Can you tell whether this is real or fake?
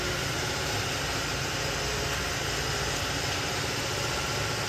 fake